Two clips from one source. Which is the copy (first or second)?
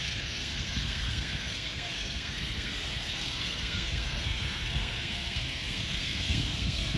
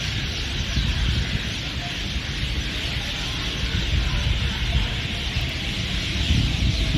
first